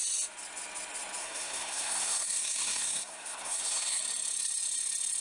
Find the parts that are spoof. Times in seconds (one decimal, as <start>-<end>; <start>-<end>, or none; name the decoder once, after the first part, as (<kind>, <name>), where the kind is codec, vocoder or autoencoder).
1.2-4.0 (codec, SNAC)